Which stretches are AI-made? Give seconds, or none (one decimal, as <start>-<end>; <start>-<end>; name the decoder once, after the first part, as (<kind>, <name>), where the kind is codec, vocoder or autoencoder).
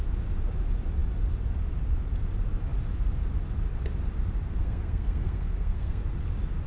4.6-6.0 (codec, SNAC)